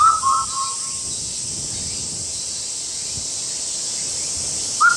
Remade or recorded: recorded